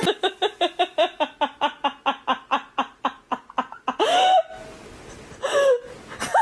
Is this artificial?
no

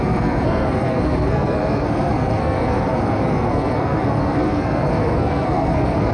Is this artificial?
yes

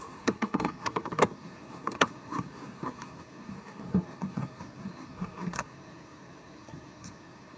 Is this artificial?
yes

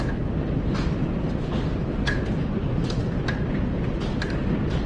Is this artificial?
no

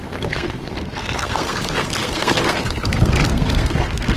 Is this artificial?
yes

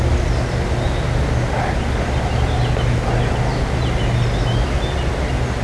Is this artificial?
no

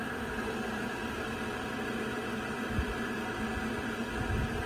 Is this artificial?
no